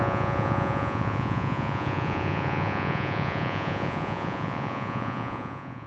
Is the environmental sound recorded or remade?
remade